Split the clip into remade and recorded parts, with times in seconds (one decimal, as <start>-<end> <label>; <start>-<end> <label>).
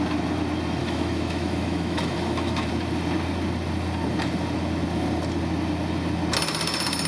0.0-0.8 recorded; 0.8-2.7 remade; 2.7-7.1 recorded